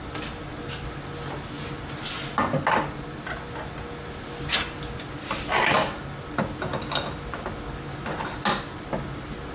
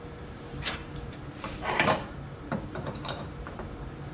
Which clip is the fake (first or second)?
second